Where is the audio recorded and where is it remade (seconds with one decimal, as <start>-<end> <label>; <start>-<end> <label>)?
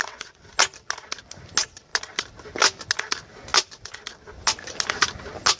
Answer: 0.0-0.5 remade; 0.5-5.6 recorded